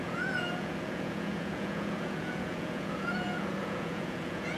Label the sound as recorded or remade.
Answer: remade